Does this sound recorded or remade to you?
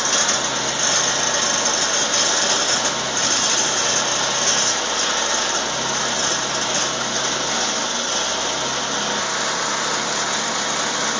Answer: recorded